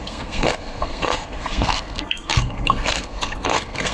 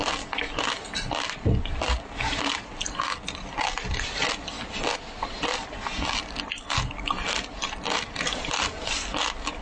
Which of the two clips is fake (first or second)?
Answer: first